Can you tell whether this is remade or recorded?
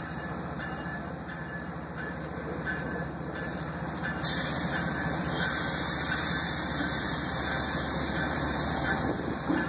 remade